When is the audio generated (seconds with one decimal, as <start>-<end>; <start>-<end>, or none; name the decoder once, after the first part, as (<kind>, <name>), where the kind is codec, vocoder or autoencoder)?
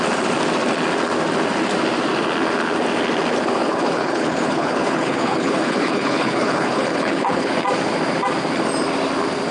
3.6-7.5 (codec, HILCodec)